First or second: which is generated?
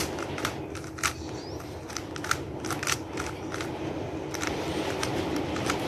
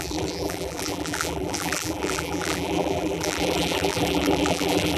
second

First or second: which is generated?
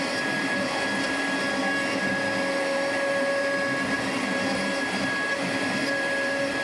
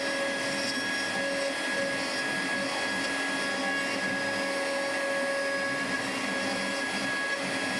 first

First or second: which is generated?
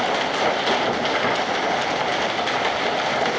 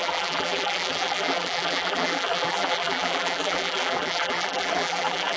second